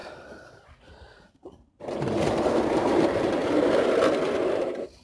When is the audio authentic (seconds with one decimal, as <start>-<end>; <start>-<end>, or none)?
3.4-4.6